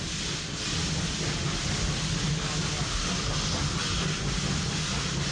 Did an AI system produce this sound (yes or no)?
no